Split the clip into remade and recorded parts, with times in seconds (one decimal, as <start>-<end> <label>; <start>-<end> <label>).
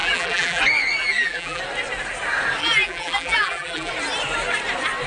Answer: 0.0-0.6 remade; 0.6-1.0 recorded; 1.0-1.6 remade; 1.6-2.6 recorded; 2.6-3.9 remade; 3.9-5.1 recorded